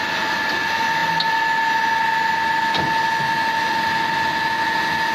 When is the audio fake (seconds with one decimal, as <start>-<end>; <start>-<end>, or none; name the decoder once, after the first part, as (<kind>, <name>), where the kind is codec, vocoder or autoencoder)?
none